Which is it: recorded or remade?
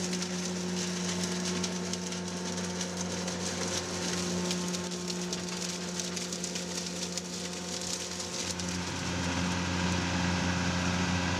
recorded